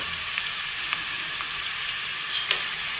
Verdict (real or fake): real